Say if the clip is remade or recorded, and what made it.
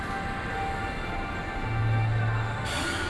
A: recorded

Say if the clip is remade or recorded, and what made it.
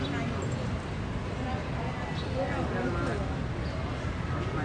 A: recorded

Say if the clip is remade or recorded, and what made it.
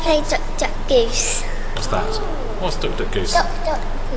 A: recorded